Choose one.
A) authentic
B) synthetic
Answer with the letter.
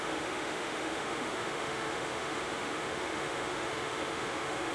B